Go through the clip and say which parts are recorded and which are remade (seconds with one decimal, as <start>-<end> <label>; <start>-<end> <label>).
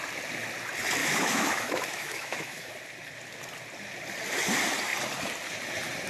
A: 0.0-1.0 recorded; 1.0-2.7 remade; 2.7-6.1 recorded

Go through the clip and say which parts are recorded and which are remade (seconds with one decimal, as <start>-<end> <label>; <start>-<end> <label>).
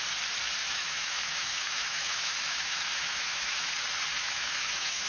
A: 0.0-0.6 recorded; 0.6-3.7 remade; 3.7-4.2 recorded; 4.2-5.1 remade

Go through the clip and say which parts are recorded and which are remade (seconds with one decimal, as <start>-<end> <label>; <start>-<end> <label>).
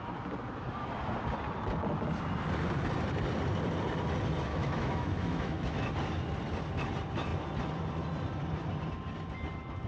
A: 0.0-4.5 recorded; 4.5-5.9 remade; 5.9-9.9 recorded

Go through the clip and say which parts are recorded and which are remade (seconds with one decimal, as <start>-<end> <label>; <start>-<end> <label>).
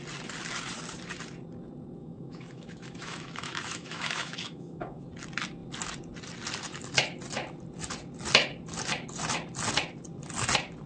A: 0.0-2.0 recorded; 2.0-5.1 remade; 5.1-10.9 recorded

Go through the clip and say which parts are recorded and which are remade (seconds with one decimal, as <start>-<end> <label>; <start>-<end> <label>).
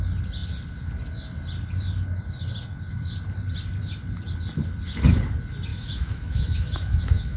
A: 0.0-5.7 recorded; 5.7-7.4 remade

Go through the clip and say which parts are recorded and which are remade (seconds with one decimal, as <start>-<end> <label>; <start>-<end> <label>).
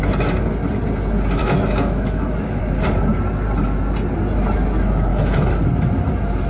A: 0.0-1.4 recorded; 1.4-2.6 remade; 2.6-5.1 recorded; 5.1-5.6 remade; 5.6-6.5 recorded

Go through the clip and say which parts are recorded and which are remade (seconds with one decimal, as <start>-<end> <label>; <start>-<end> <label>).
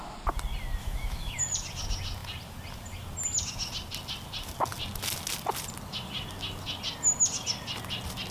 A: 0.0-0.8 recorded; 0.8-1.4 remade; 1.4-8.3 recorded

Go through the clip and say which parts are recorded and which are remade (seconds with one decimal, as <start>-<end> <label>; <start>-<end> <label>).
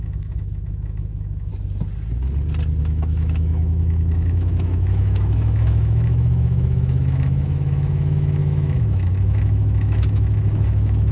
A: 0.0-1.5 remade; 1.5-2.8 recorded; 2.8-11.1 remade